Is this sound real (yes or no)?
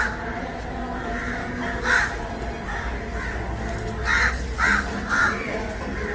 yes